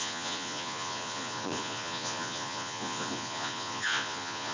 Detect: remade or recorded remade